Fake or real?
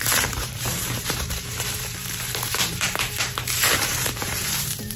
fake